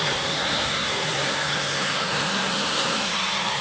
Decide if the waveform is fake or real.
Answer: fake